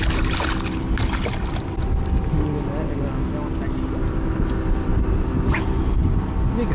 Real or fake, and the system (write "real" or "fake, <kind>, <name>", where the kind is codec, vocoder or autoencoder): real